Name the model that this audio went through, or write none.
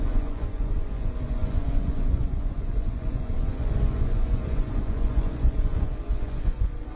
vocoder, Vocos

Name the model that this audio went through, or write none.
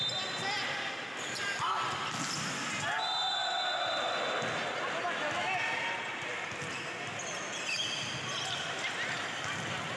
none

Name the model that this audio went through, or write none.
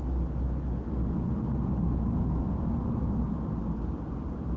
none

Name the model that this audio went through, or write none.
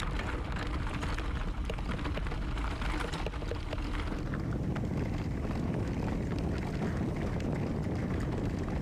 none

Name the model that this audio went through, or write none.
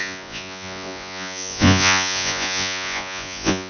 vocoder, Vocos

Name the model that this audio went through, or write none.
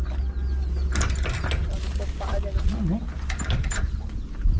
none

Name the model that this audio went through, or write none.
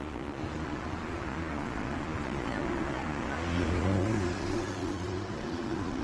vocoder, Vocos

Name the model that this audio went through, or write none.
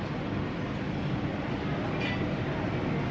none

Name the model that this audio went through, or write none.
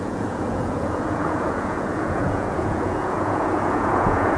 vocoder, Vocos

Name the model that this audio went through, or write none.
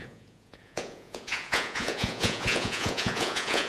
vocoder, Vocos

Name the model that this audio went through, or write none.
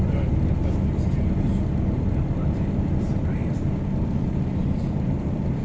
none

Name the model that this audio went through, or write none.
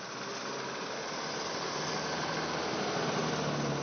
none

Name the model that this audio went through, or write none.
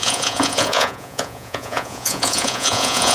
vocoder, Vocos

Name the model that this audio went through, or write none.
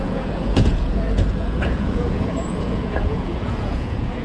vocoder, Vocos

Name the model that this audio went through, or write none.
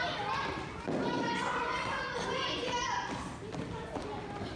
none